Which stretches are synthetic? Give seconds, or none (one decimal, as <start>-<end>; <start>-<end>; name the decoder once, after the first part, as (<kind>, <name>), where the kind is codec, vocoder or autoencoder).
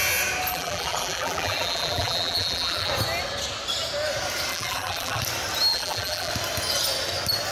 0.5-2.9 (vocoder, BigVGAN v2); 4.5-5.2; 5.7-6.3